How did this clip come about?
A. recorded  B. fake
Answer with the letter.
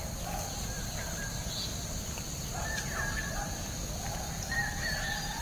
A